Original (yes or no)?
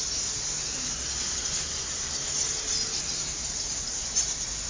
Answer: yes